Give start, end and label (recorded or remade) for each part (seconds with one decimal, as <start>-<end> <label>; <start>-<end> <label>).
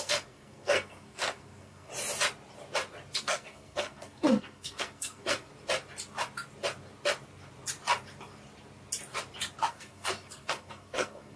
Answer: 0.0-1.9 remade; 1.9-3.2 recorded; 3.2-5.5 remade; 5.5-9.6 recorded; 9.6-11.4 remade